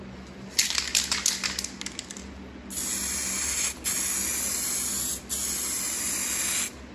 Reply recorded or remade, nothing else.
recorded